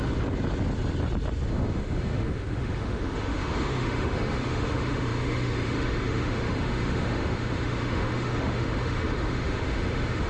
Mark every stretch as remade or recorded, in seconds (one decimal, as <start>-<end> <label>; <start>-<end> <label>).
0.0-1.5 recorded; 1.5-10.3 remade